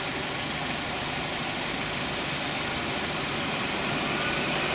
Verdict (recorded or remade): recorded